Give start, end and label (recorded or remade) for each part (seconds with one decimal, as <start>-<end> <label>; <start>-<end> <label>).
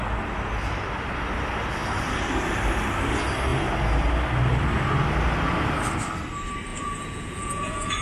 0.0-6.7 recorded; 6.7-8.0 remade